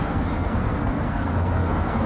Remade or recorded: remade